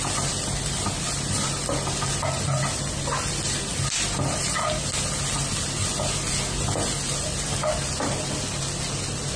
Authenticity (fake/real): real